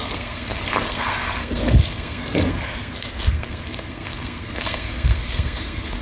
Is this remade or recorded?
remade